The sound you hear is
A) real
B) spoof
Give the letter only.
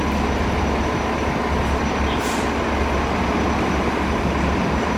A